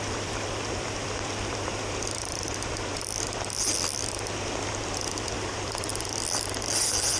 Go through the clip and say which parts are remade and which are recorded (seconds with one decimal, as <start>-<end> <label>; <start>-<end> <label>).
0.0-7.2 remade